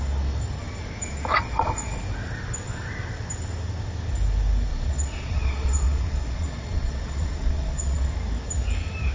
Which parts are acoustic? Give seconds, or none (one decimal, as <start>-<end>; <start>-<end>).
0.0-1.3; 1.9-4.7; 8.1-9.1